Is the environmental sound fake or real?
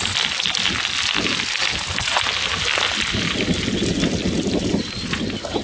real